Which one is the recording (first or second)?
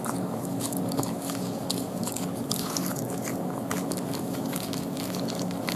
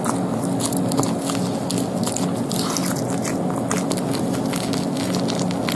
second